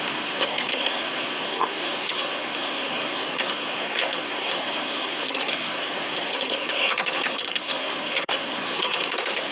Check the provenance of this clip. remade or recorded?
remade